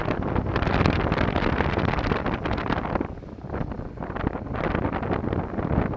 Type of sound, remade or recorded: remade